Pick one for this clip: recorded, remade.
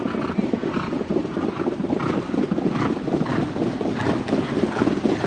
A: recorded